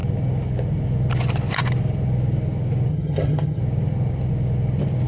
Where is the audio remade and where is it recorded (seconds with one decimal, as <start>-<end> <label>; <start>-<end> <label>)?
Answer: 0.0-2.9 recorded; 2.9-3.6 remade; 3.6-5.1 recorded